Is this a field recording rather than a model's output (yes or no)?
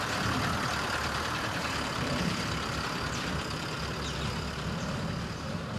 no